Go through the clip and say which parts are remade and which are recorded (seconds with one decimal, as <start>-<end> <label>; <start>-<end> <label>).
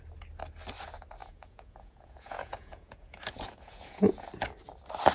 0.0-1.2 recorded; 1.2-4.3 remade; 4.3-5.1 recorded